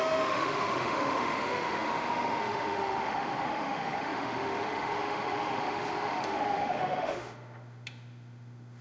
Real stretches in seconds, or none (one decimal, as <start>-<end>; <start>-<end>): none